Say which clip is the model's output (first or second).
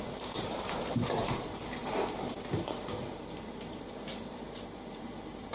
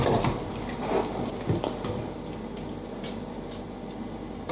first